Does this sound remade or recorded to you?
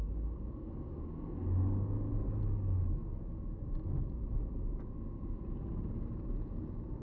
recorded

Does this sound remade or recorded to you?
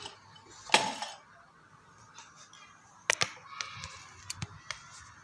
recorded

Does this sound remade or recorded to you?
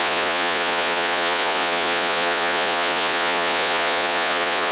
remade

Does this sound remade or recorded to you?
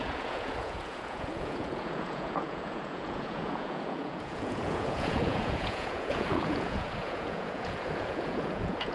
remade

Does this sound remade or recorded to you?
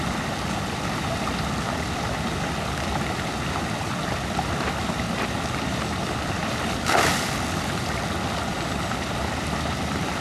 recorded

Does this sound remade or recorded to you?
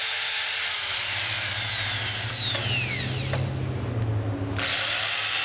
recorded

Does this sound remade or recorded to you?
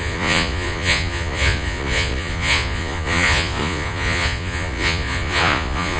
remade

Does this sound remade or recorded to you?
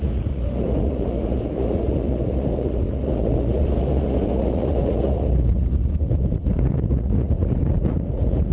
remade